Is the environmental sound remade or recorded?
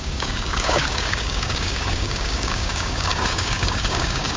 remade